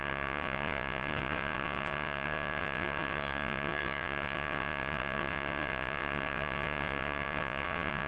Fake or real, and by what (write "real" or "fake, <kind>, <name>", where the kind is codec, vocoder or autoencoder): fake, vocoder, WaveNeXt